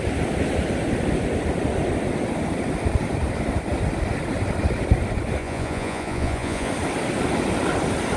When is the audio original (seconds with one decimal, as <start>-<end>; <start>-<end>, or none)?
0.0-5.4; 6.7-8.2